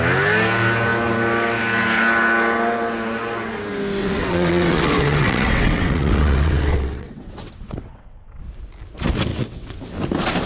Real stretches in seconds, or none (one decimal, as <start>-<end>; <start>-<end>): 0.0-4.0; 8.4-9.3; 9.8-10.5